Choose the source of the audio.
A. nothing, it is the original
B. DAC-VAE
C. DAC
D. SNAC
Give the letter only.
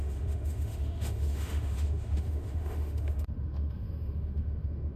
B